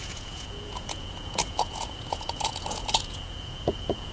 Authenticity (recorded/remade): remade